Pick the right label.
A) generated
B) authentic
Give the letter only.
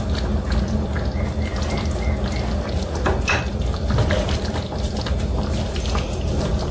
B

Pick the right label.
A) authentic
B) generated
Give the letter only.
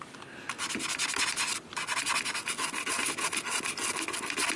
A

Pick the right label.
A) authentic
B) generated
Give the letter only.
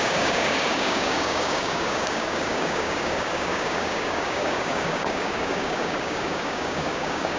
B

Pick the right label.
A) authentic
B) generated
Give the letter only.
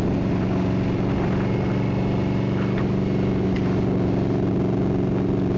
A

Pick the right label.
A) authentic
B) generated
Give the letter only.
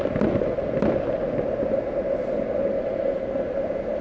A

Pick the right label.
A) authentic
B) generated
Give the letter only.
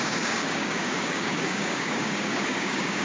B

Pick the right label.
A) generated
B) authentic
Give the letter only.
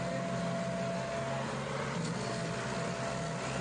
B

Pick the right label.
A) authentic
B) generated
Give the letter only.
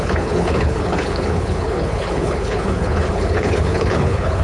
B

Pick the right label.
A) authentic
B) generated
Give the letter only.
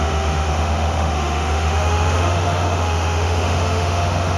B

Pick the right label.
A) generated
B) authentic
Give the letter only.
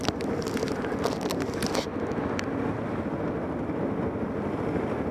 B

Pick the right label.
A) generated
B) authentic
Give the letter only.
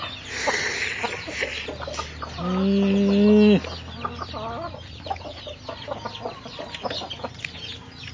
B